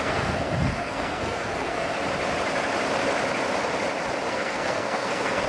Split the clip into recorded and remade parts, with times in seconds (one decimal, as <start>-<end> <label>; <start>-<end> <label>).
0.0-1.9 remade; 1.9-4.3 recorded; 4.3-5.5 remade

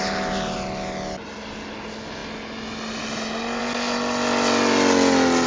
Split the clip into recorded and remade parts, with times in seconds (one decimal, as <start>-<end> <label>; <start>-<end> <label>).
0.0-5.5 recorded